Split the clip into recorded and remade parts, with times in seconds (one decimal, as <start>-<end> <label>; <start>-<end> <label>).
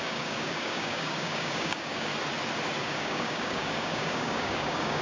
0.0-2.1 remade; 2.1-2.8 recorded; 2.8-5.0 remade